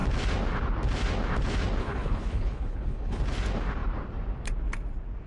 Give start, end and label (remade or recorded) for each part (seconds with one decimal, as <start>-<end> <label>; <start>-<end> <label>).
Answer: 0.0-1.8 recorded; 1.8-3.2 remade; 3.2-5.3 recorded